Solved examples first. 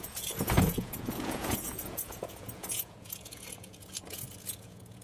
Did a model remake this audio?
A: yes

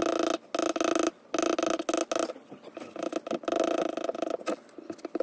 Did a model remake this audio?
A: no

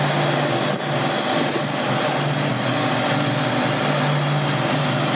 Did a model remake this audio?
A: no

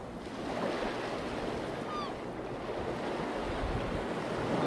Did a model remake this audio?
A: no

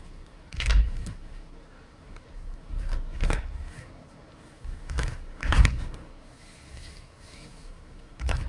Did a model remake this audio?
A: yes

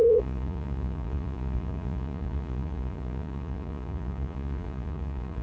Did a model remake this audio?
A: yes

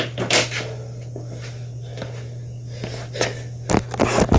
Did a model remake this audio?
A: no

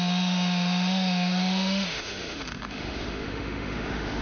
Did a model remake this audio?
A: yes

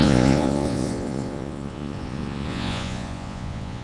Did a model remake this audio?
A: yes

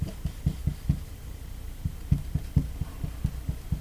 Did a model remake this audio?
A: no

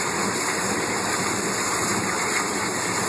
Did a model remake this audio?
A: no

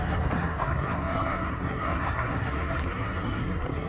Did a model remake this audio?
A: yes